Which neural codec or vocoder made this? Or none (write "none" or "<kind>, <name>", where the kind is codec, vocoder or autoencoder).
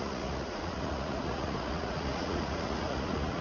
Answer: vocoder, Vocos